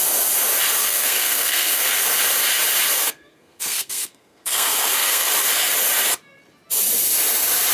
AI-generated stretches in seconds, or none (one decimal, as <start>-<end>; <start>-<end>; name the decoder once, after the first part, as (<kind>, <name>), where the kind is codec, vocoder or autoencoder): 0.8-2.2 (codec, SNAC); 3.0-5.3